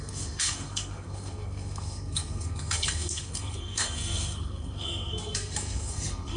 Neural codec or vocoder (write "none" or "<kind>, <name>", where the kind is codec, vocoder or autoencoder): codec, SNAC